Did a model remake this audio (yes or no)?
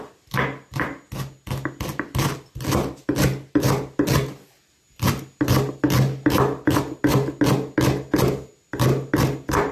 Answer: no